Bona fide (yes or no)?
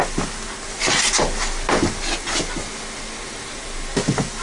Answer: yes